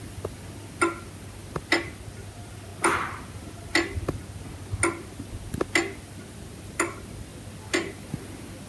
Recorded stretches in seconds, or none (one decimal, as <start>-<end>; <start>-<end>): 0.0-8.7